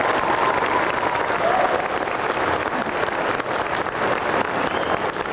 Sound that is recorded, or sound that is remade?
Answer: recorded